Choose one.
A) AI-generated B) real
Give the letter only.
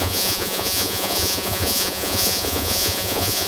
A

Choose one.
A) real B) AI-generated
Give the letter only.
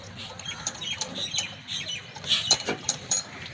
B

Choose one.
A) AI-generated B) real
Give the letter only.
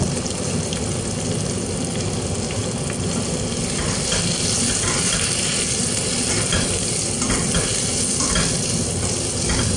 B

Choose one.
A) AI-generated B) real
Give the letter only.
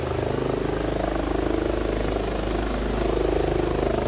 B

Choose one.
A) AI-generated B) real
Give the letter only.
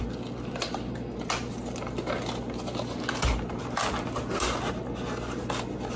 B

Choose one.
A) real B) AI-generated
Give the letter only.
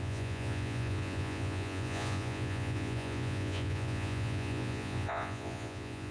B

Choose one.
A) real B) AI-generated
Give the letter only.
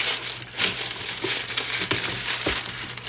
A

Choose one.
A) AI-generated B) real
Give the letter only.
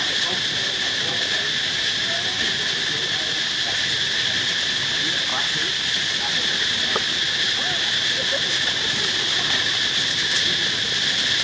B